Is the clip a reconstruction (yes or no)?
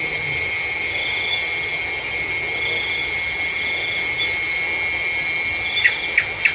no